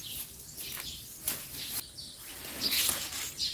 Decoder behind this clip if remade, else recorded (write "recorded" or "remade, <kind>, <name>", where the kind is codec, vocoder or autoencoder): recorded